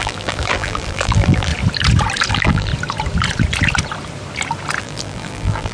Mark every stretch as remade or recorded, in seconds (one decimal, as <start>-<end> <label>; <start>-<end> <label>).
0.0-1.5 remade; 1.5-2.3 recorded; 2.3-2.7 remade; 2.7-4.8 recorded; 4.8-5.7 remade